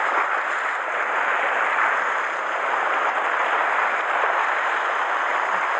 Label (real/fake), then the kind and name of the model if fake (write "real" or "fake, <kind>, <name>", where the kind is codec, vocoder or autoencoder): real